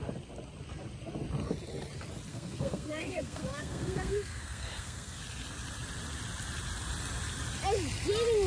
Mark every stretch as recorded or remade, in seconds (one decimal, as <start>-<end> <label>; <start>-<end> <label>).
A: 0.0-2.3 recorded; 2.3-5.2 remade; 5.2-8.5 recorded

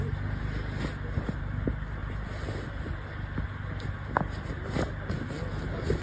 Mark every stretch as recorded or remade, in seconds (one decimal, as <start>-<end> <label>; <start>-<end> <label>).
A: 0.0-2.0 recorded; 2.0-2.9 remade; 2.9-6.0 recorded

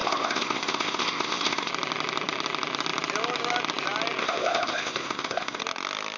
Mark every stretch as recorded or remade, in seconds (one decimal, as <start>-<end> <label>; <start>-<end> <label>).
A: 0.0-1.7 remade; 1.7-4.2 recorded; 4.2-5.6 remade; 5.6-6.2 recorded

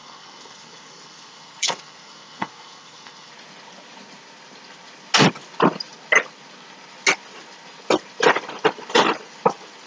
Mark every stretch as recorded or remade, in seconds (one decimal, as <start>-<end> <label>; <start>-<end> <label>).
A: 0.0-3.3 remade; 3.3-9.9 recorded